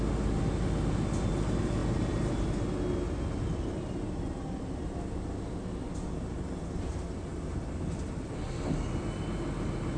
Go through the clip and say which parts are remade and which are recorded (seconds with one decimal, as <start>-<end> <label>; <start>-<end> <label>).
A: 0.0-10.0 recorded